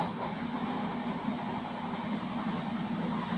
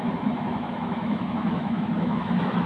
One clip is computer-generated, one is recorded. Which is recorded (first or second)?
first